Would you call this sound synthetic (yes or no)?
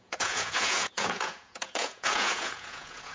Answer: yes